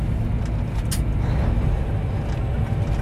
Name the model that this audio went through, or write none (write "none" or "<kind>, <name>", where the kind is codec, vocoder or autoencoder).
none